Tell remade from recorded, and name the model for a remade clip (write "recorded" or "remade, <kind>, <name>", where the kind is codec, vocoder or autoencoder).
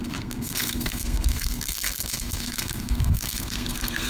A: remade, codec, SNAC